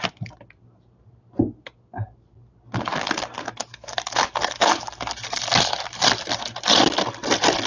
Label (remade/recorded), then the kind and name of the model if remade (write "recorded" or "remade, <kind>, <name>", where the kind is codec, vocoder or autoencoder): recorded